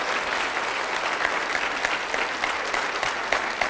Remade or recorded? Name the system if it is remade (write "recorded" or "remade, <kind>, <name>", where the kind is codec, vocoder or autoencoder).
recorded